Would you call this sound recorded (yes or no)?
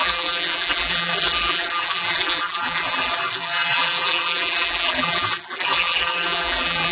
no